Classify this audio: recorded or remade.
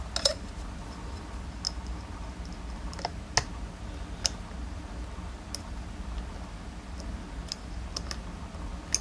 recorded